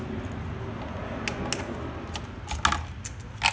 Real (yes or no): yes